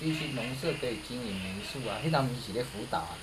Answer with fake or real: real